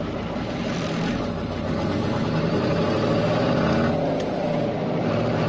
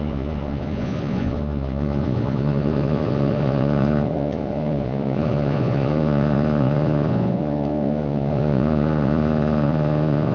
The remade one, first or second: second